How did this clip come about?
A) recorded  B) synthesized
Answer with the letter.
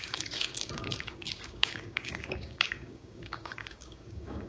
B